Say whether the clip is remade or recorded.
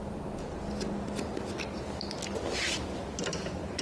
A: recorded